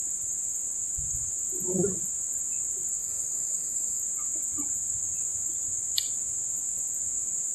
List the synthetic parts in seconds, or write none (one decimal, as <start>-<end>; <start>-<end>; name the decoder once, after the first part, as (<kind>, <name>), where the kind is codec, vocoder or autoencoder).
3.0-4.0 (codec, DAC)